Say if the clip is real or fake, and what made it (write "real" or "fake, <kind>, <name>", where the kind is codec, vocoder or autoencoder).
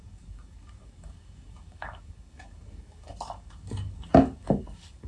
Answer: fake, codec, DAC